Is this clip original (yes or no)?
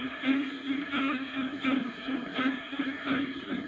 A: no